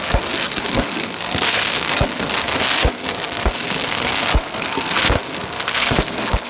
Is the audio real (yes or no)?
no